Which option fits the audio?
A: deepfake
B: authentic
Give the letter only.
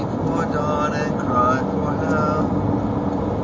B